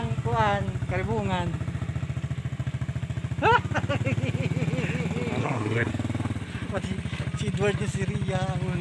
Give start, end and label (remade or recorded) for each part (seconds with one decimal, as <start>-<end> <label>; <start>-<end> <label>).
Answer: 0.0-5.4 recorded; 5.4-5.9 remade; 5.9-8.8 recorded